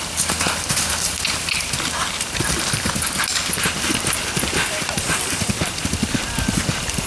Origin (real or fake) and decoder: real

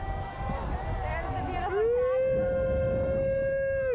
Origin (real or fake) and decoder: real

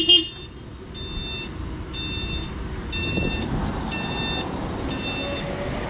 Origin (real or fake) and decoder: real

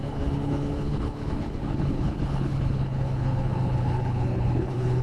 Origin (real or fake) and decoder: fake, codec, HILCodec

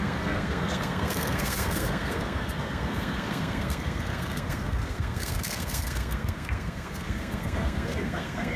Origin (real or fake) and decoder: fake, codec, SNAC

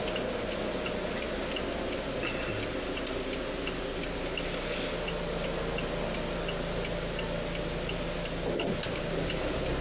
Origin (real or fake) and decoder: real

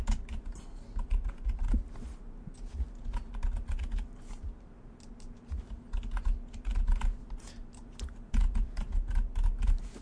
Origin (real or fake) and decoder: real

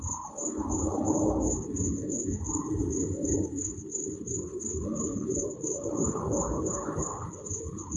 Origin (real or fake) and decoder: fake, codec, HILCodec